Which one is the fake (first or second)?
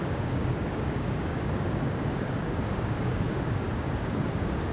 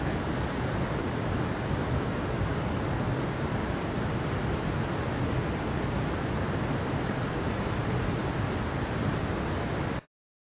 first